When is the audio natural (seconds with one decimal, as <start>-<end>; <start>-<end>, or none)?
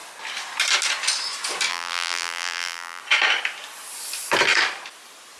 0.0-1.7; 3.0-5.4